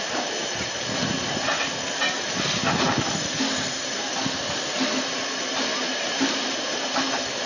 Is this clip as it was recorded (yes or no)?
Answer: no